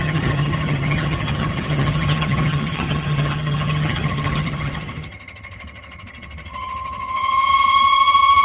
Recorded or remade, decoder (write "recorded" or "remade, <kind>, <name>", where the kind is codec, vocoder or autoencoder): remade, vocoder, HiFi-GAN